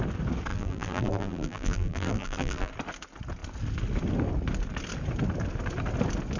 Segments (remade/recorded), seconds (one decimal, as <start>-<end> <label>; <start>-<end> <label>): 0.0-0.5 recorded; 0.5-2.7 remade; 2.7-6.4 recorded